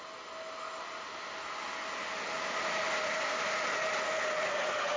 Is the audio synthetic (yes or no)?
no